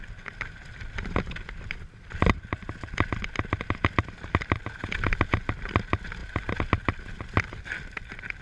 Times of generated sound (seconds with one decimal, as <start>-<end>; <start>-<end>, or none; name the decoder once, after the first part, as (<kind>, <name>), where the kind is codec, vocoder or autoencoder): none